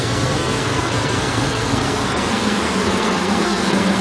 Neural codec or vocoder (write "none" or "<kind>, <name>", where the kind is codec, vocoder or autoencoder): codec, SNAC